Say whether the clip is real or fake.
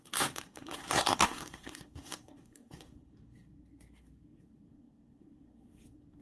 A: fake